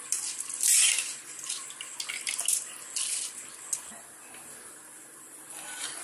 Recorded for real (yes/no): yes